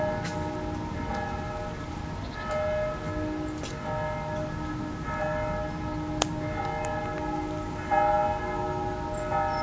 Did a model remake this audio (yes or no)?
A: no